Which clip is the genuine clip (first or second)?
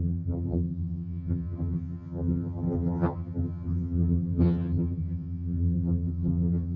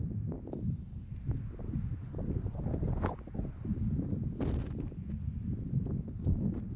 second